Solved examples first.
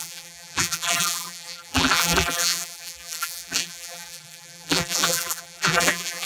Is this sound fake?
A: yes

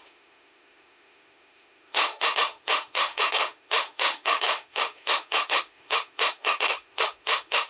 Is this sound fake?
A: yes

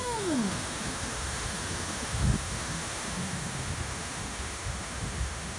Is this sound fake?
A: yes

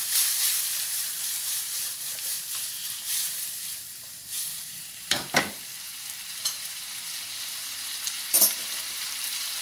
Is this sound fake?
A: yes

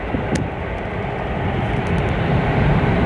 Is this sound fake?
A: no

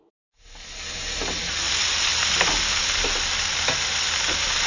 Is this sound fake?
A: no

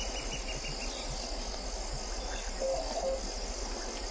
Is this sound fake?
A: no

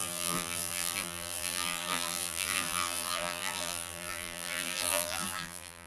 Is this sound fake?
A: yes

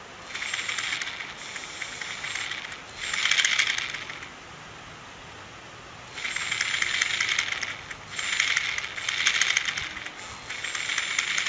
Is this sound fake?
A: no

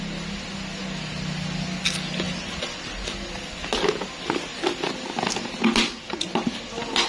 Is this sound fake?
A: no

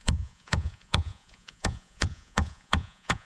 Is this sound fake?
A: yes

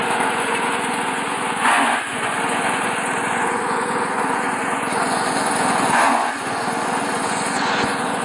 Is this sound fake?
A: yes